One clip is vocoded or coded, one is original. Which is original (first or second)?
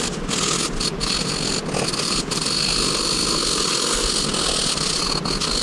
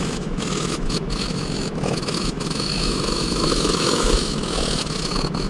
first